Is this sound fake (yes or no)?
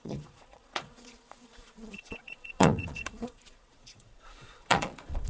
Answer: yes